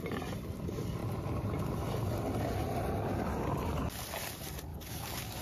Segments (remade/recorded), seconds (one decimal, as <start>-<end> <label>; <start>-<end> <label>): 0.0-4.7 recorded; 4.7-5.4 remade